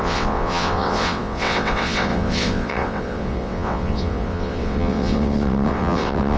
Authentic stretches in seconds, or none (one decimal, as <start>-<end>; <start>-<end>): none